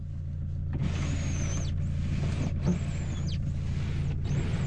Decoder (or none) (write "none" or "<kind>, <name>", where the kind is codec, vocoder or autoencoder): none